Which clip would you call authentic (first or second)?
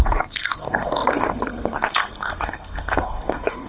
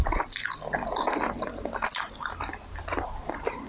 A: second